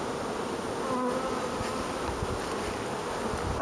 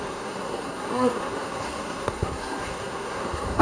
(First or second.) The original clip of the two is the first